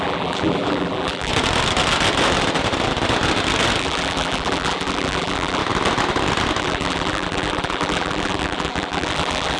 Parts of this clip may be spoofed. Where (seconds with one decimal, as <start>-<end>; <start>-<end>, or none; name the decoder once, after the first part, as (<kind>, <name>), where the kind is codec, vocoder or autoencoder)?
0.0-1.3 (vocoder, BigVGAN v2); 3.8-5.6; 6.6-9.6